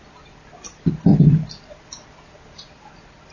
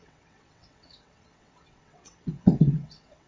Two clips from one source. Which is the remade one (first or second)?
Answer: second